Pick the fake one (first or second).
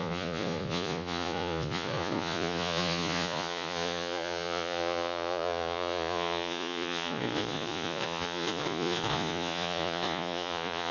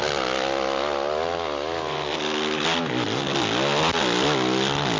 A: first